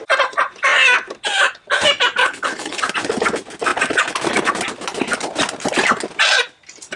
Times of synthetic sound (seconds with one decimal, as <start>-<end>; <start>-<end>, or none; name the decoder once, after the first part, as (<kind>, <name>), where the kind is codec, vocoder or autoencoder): 2.2-2.8 (codec, HILCodec)